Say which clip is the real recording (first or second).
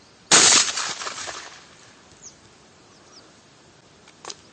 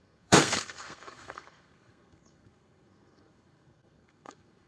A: first